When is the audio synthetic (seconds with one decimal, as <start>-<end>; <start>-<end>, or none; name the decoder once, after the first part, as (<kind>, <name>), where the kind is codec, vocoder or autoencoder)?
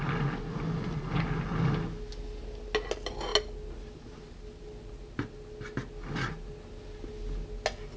none